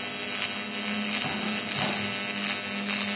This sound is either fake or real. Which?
real